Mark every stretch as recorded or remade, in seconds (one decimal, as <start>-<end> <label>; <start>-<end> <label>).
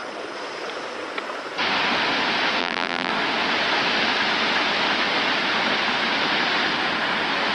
0.0-2.6 recorded; 2.6-3.1 remade; 3.1-7.5 recorded